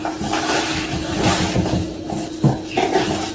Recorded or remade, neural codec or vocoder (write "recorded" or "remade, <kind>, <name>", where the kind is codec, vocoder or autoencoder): remade, vocoder, BigVGAN v2